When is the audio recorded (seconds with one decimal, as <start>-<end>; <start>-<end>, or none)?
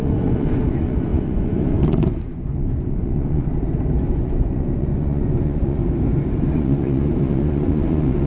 3.5-4.1; 5.8-6.5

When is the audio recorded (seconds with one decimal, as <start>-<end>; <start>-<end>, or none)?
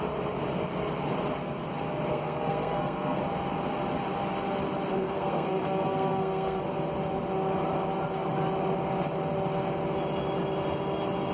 0.0-2.1; 3.2-4.9; 6.6-11.3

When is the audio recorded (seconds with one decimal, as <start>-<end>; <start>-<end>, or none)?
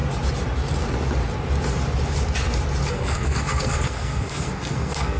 0.0-2.9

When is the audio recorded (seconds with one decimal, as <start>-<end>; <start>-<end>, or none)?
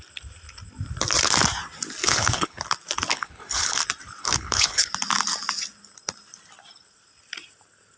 0.0-2.0; 2.6-3.1; 3.8-4.2; 4.9-8.0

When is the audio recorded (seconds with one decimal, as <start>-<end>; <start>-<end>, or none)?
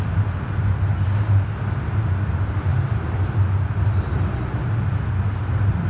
0.0-5.9